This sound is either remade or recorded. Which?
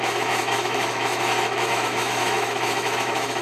remade